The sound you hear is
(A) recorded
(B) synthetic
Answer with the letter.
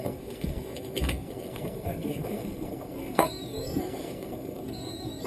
B